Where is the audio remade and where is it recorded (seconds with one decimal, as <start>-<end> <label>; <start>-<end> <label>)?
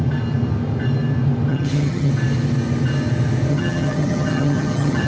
0.0-1.5 recorded; 1.5-2.1 remade; 2.1-3.5 recorded; 3.5-5.1 remade